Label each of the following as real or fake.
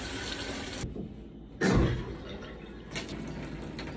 real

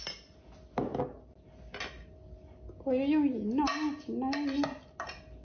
real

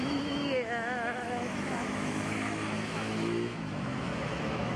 fake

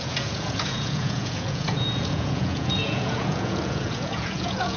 fake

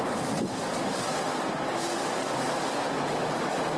real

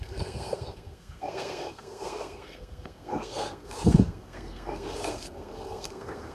fake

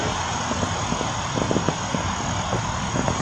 real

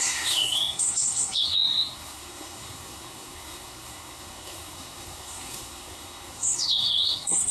fake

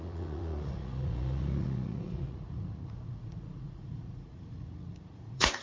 fake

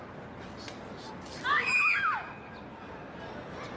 real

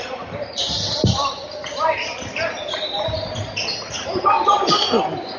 fake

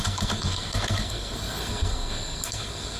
fake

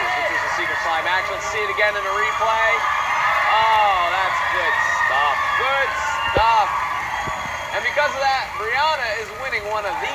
real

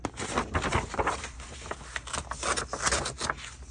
real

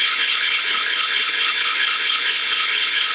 fake